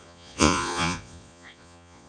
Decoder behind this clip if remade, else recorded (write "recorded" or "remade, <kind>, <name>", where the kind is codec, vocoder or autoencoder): remade, vocoder, Vocos